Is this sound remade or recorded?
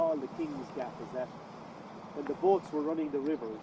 recorded